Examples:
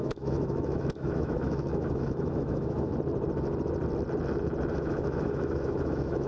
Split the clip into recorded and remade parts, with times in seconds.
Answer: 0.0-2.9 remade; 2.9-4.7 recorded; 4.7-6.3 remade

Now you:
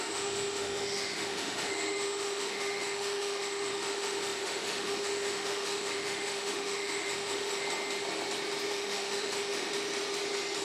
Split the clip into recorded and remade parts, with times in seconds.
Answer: 0.0-7.6 remade; 7.6-8.7 recorded; 8.7-9.7 remade; 9.7-10.6 recorded

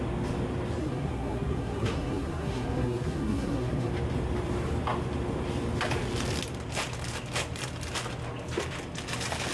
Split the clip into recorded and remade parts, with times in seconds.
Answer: 0.0-0.8 recorded; 0.8-3.9 remade; 3.9-9.5 recorded